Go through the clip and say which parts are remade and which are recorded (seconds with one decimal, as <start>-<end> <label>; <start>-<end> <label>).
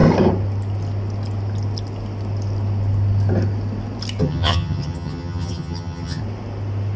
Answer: 0.0-4.2 recorded; 4.2-6.2 remade; 6.2-7.0 recorded